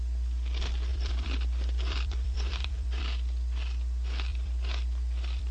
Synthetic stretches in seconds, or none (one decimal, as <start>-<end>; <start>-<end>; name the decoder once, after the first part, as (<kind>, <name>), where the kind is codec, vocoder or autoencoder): 0.9-3.0 (vocoder, BigVGAN v2); 4.3-5.5